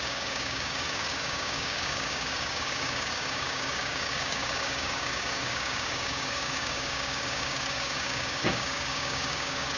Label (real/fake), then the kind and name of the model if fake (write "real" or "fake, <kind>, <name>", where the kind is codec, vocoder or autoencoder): fake, codec, DAC